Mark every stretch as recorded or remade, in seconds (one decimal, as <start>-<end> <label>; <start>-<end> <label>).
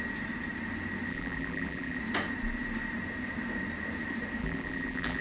0.0-1.1 recorded; 1.1-2.0 remade; 2.0-4.4 recorded; 4.4-5.2 remade